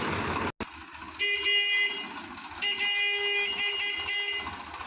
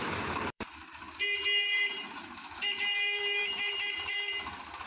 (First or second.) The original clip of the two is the first